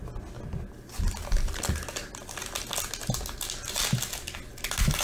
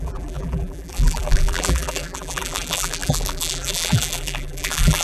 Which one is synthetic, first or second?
second